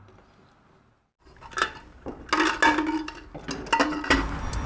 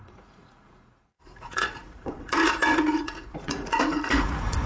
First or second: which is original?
first